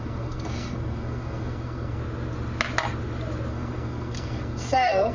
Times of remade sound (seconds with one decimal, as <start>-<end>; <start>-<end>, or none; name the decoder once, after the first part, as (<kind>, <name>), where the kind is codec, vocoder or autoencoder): 0.0-2.0 (codec, SNAC); 3.5-5.1